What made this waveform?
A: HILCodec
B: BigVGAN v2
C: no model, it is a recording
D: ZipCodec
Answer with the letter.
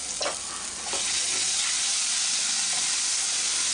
C